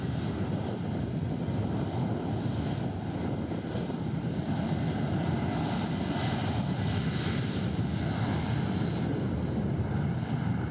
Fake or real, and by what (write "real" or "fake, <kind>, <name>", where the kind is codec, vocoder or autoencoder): real